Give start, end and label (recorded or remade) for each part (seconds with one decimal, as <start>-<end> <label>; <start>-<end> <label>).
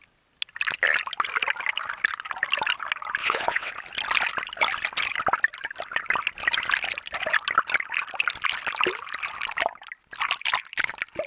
0.0-3.2 recorded; 3.2-3.7 remade; 3.7-11.3 recorded